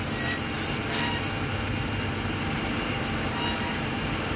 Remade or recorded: recorded